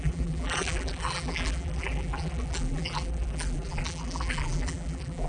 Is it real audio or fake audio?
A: fake